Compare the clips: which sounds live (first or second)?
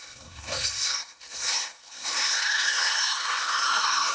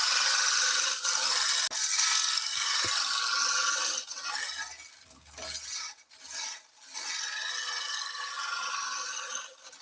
second